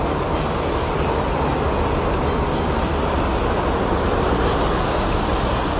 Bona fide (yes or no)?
yes